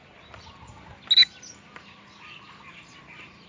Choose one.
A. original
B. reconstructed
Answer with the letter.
A